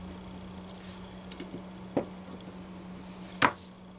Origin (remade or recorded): recorded